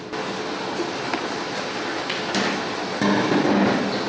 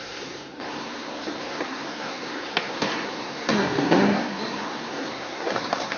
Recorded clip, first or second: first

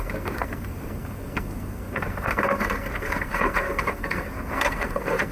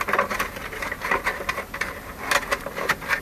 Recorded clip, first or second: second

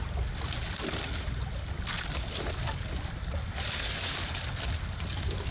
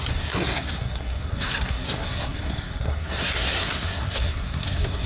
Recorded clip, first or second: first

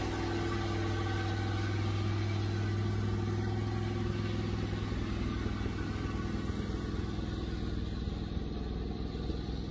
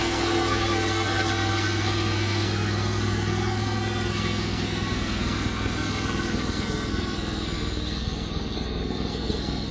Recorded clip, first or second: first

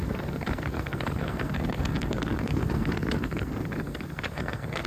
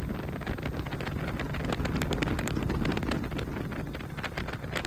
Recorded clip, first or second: second